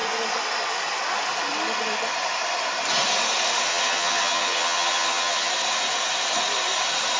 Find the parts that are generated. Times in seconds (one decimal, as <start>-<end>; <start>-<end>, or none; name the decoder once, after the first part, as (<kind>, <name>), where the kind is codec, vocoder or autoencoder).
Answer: 3.7-5.5 (vocoder, HiFi-GAN)